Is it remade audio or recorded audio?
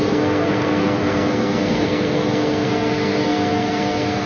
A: remade